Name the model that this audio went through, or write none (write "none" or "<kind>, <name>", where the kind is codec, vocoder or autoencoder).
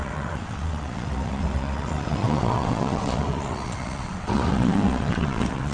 vocoder, WaveNeXt